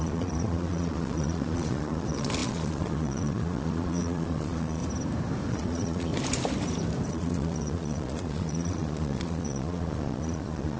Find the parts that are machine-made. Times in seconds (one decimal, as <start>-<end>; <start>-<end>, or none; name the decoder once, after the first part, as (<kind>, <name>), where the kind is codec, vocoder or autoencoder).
0.0-4.8 (vocoder, Vocos); 5.5-6.1; 7.1-10.8